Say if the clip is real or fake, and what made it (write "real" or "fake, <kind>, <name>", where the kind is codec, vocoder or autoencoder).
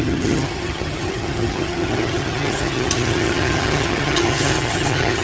fake, vocoder, HiFi-GAN